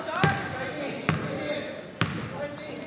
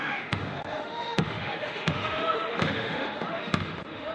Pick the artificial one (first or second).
second